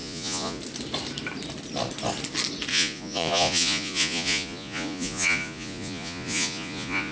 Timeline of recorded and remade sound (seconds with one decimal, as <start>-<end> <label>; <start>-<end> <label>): 0.0-0.6 remade; 0.6-2.7 recorded; 2.7-7.1 remade